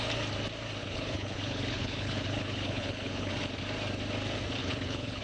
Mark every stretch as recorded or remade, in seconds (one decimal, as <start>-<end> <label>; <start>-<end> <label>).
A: 0.0-0.8 recorded; 0.8-3.3 remade; 3.3-4.6 recorded; 4.6-5.2 remade

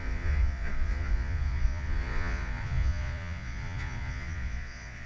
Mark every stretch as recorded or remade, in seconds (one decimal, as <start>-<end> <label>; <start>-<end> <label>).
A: 0.0-5.1 remade

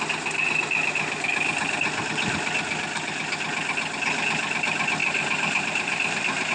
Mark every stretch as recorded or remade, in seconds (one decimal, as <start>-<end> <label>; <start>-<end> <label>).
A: 0.0-5.0 recorded; 5.0-6.5 remade

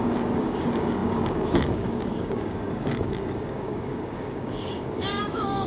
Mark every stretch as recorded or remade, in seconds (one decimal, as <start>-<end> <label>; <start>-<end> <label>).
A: 0.0-5.7 remade

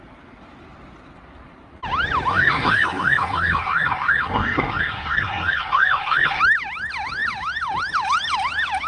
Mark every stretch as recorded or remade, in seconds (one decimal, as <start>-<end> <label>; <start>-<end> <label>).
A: 0.0-2.3 recorded; 2.3-6.4 remade; 6.4-8.9 recorded

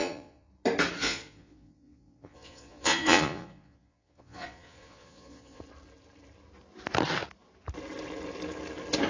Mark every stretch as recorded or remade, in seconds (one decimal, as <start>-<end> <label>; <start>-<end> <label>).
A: 0.0-0.5 remade; 0.5-1.0 recorded; 1.0-5.6 remade; 5.6-9.1 recorded